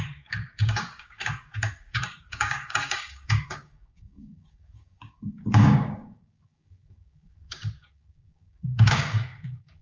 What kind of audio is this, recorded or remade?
remade